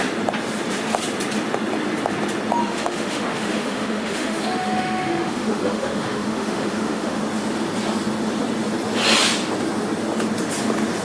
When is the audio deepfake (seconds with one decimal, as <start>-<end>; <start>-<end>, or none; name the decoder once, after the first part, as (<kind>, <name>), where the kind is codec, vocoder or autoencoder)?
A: 2.6-7.2 (autoencoder, DAC-VAE)